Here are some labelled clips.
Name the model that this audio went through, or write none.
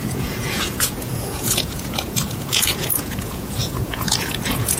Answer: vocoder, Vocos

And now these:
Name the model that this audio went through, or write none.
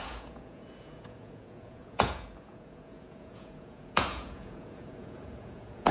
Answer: vocoder, Vocos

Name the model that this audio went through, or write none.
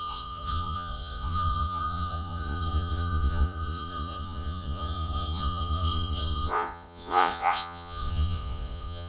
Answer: vocoder, Vocos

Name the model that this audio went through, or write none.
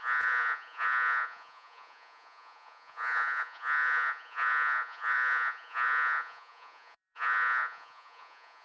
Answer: vocoder, Vocos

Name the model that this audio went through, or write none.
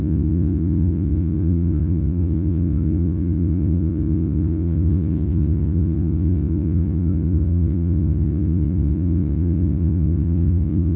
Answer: vocoder, Vocos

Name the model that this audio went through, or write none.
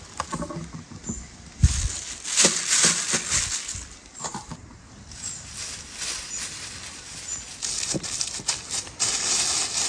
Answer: none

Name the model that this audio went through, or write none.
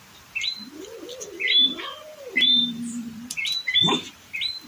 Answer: none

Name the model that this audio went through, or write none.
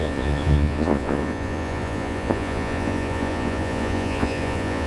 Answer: vocoder, Vocos